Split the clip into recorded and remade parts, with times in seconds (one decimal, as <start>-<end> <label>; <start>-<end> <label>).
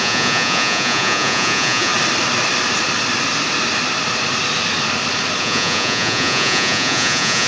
0.0-1.9 remade; 1.9-5.4 recorded; 5.4-7.5 remade